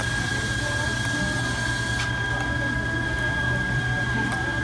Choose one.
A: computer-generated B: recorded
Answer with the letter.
B